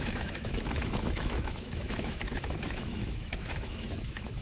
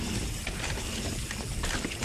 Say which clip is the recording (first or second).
second